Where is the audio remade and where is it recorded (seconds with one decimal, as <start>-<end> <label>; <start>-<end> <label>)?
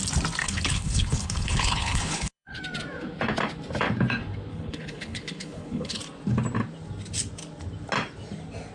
0.0-0.4 recorded; 0.4-2.6 remade; 2.6-4.5 recorded; 4.5-6.0 remade; 6.0-8.7 recorded